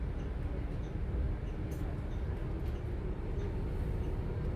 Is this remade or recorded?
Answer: recorded